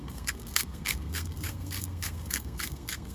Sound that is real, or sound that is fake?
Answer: fake